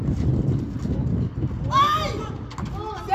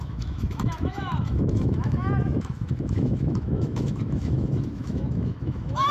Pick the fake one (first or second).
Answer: second